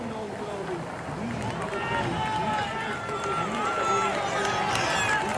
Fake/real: real